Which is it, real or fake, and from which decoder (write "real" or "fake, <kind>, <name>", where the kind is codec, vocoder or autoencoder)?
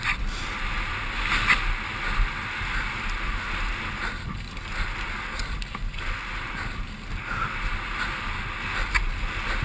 real